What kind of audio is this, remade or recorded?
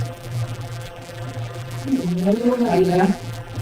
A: remade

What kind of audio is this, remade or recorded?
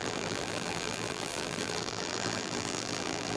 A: remade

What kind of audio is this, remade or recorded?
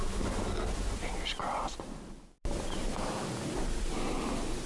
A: recorded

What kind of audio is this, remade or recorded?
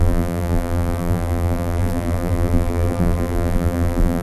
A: remade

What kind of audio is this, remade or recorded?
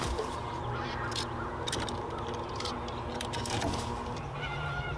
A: remade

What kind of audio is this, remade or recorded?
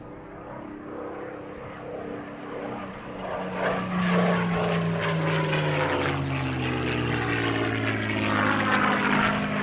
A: recorded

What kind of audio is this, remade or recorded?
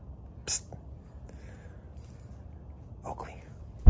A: recorded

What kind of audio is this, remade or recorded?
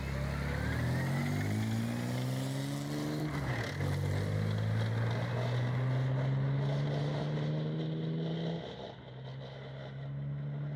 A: recorded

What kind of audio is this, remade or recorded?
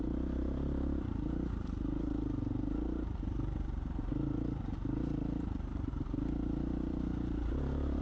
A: remade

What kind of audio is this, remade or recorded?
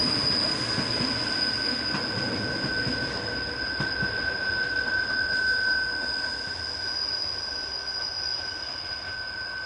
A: recorded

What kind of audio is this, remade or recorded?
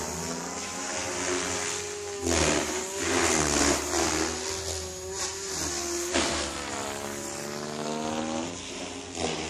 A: recorded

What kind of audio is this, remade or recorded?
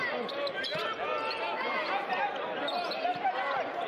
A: recorded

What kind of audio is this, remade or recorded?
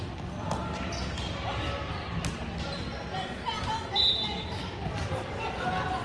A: recorded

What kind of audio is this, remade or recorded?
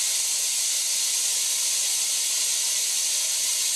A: recorded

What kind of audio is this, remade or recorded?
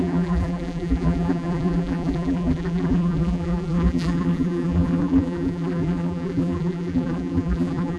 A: remade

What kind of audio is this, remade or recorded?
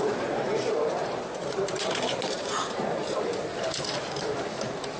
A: remade